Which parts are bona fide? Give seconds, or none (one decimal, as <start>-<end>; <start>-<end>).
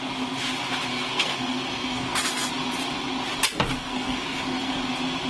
0.0-0.9; 2.5-3.7; 4.8-5.3